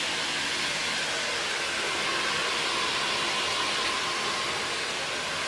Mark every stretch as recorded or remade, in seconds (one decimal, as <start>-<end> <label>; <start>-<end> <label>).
0.0-5.5 recorded